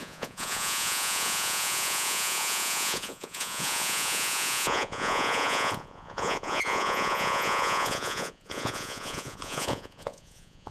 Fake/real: fake